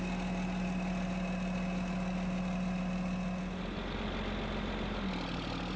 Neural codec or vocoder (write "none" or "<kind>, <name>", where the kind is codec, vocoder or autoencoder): none